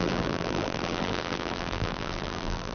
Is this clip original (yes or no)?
no